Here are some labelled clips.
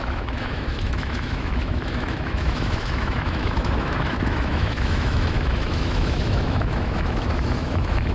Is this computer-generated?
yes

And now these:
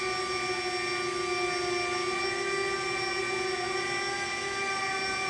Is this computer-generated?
no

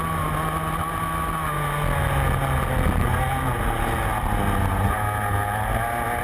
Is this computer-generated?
no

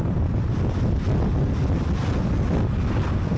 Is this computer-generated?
no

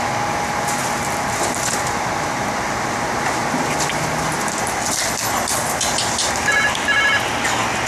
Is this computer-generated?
no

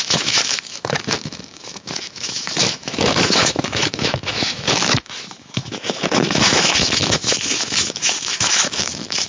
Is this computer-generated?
yes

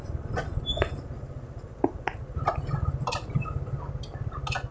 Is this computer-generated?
no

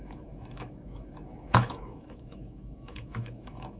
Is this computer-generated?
yes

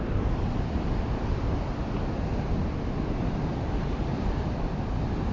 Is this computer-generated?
no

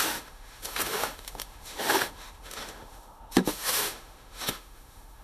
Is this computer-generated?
yes